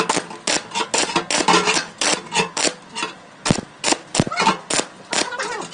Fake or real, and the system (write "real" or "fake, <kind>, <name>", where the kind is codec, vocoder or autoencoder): real